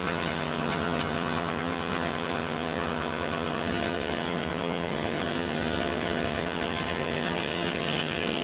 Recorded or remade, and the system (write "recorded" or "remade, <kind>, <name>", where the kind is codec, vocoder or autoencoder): remade, vocoder, HiFi-GAN